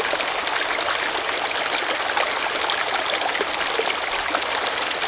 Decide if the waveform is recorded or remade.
recorded